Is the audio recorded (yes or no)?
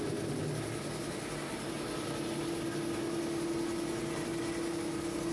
yes